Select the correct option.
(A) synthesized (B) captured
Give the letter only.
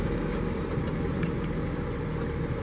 B